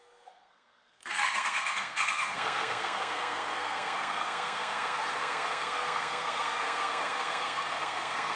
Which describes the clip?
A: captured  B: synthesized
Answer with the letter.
B